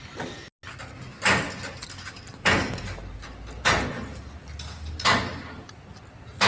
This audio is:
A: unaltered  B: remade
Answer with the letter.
A